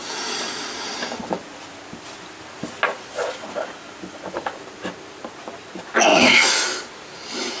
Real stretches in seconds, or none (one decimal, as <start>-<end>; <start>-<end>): 0.0-6.1; 6.8-7.6